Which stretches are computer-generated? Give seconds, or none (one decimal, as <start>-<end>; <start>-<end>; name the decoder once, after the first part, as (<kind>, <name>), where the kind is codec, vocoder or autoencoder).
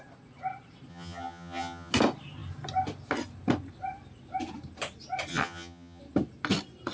0.9-1.9 (vocoder, HiFi-GAN); 5.3-6.0